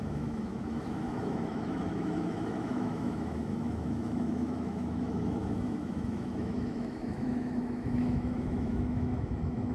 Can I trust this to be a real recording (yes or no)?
no